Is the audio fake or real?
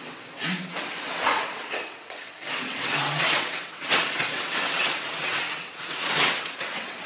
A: fake